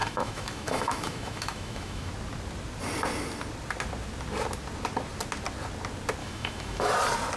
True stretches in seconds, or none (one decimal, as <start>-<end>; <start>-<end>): 2.1-6.2; 6.9-7.4